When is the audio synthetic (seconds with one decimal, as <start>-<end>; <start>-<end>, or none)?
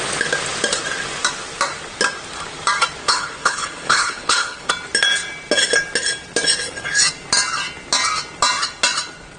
3.0-4.7